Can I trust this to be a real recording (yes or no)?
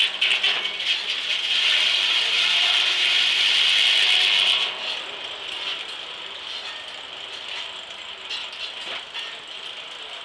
yes